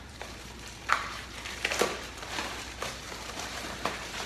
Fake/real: fake